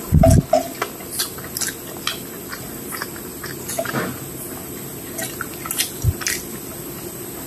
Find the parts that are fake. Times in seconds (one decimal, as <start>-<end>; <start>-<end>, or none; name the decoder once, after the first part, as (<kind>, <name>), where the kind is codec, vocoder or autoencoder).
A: 3.3-4.5 (vocoder, BigVGAN v2)